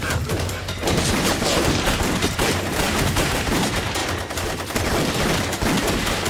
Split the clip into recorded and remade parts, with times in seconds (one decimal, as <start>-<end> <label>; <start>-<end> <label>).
0.0-4.0 remade; 4.0-5.8 recorded; 5.8-6.3 remade